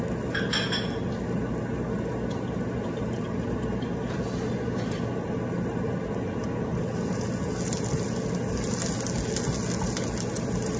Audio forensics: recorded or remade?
recorded